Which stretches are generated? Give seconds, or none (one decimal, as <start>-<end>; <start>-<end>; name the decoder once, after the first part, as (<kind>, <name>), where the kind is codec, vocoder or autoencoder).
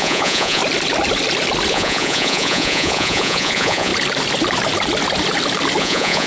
0.0-0.6 (vocoder, Vocos); 1.7-3.9; 5.8-6.3